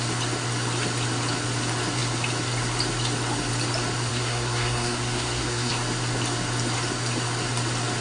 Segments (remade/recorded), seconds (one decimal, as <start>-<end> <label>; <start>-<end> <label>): 0.0-4.1 recorded; 4.1-5.7 remade; 5.7-8.0 recorded